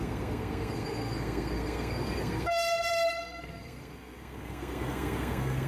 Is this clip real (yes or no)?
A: no